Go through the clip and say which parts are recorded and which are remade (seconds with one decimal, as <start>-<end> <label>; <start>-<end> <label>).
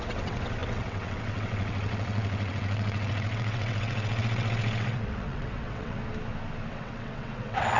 0.0-6.0 remade; 6.0-6.7 recorded; 6.7-7.8 remade